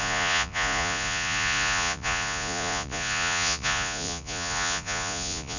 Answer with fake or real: fake